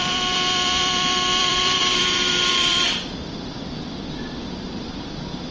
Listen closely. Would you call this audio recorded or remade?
remade